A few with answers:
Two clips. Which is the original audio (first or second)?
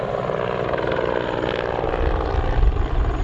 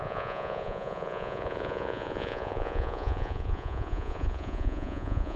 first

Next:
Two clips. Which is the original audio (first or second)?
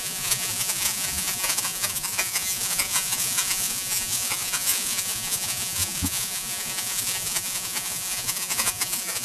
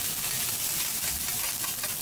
second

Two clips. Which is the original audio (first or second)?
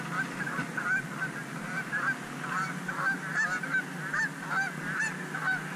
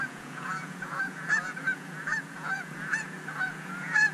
first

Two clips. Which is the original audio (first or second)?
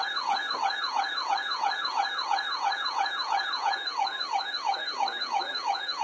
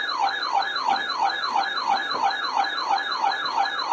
second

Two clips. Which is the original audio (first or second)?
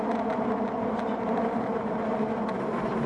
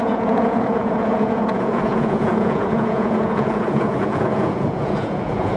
first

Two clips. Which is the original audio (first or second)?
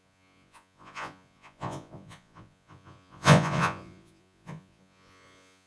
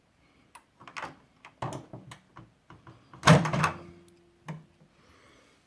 second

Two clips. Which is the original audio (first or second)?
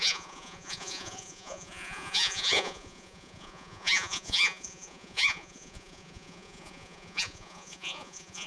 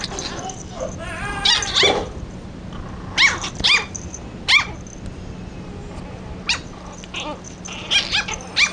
second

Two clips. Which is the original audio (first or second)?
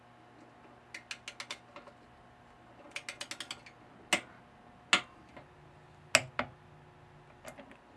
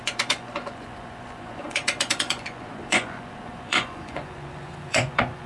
first